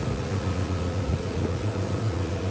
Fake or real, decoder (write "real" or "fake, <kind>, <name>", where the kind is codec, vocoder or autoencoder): fake, vocoder, Vocos